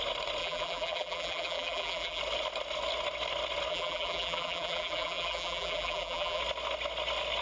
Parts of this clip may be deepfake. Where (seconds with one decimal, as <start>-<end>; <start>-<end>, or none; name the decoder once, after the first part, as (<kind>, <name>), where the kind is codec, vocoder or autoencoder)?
0.4-2.2 (vocoder, BigVGAN v2); 3.7-6.4